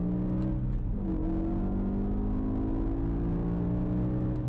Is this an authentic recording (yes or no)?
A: yes